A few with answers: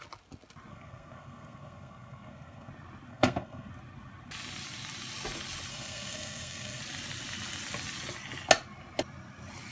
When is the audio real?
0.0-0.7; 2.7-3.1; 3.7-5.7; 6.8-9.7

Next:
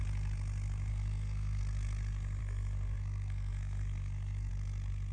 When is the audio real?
0.0-0.9; 1.6-2.4; 4.5-5.1

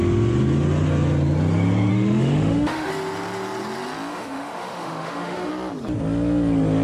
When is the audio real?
0.0-1.9; 2.9-4.1; 5.5-6.8

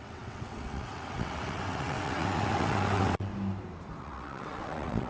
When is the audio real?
3.3-4.0

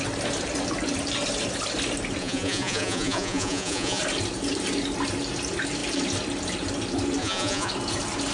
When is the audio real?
0.0-2.2; 4.0-7.2; 7.7-8.3

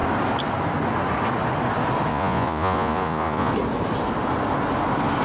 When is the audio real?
0.0-2.1; 3.5-5.2

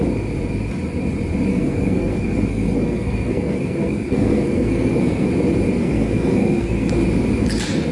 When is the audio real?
0.0-1.5; 5.3-5.8; 6.9-7.9

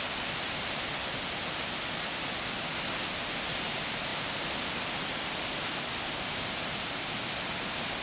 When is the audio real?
0.0-8.0